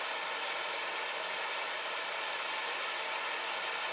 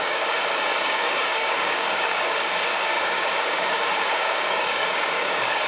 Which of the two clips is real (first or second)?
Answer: first